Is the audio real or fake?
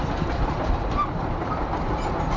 real